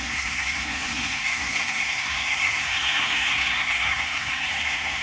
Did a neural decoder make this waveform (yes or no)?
yes